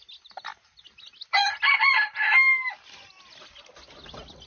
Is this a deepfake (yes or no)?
no